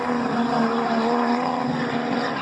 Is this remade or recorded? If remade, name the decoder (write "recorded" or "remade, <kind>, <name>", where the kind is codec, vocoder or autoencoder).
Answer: recorded